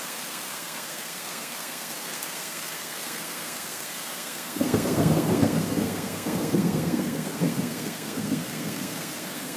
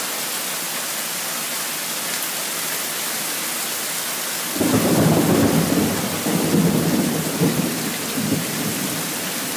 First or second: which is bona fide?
second